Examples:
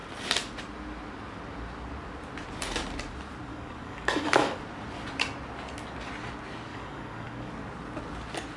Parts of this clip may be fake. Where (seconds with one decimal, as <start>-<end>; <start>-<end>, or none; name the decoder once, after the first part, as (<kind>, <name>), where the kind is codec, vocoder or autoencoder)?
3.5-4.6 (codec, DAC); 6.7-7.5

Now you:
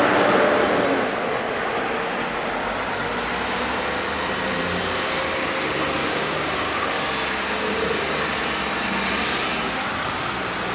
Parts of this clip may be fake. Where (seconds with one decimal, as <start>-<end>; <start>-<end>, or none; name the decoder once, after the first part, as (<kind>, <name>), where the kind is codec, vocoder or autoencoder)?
6.0-6.9 (codec, DAC)

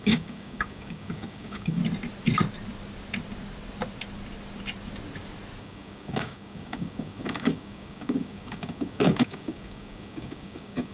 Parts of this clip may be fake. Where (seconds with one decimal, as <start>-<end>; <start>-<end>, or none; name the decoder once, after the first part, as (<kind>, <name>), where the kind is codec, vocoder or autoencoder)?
0.0-1.8 (codec, DAC); 5.6-10.9

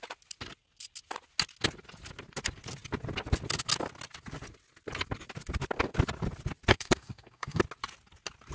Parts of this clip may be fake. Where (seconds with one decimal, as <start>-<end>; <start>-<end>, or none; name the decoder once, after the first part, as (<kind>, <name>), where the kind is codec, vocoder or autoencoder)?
6.7-7.6 (codec, DAC)

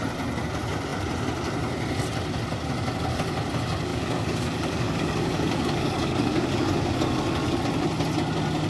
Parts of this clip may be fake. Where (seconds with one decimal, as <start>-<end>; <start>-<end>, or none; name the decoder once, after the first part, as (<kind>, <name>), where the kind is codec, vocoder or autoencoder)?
3.9-7.6 (codec, DAC)